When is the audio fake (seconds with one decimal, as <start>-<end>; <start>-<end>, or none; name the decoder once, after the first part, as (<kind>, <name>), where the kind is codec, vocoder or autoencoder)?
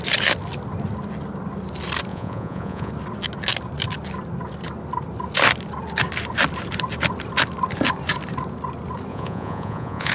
2.1-2.9 (vocoder, Vocos); 9.1-10.1